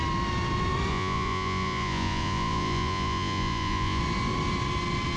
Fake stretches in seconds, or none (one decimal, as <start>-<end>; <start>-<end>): 0.9-4.0